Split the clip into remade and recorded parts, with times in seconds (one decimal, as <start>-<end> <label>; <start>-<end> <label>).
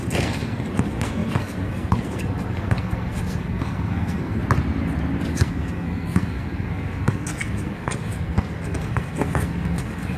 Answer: 0.0-4.4 remade; 4.4-5.3 recorded; 5.3-10.2 remade